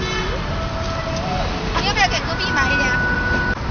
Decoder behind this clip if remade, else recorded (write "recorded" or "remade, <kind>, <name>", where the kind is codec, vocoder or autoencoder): recorded